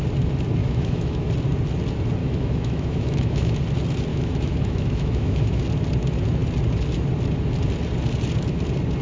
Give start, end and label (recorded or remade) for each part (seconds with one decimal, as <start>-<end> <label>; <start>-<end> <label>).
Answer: 0.0-0.6 recorded; 0.6-1.3 remade; 1.3-2.2 recorded; 2.2-3.6 remade; 3.6-4.1 recorded; 4.1-5.6 remade; 5.6-9.0 recorded